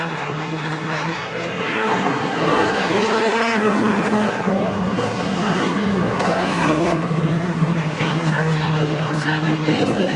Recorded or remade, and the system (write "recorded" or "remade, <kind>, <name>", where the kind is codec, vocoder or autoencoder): remade, codec, SNAC